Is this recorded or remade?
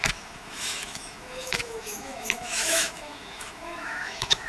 remade